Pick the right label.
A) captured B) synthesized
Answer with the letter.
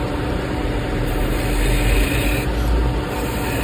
A